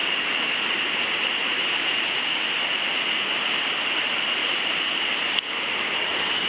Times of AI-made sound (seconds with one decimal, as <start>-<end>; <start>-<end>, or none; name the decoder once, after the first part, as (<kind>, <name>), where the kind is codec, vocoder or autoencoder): 0.0-2.4 (vocoder, BigVGAN v2); 4.4-5.3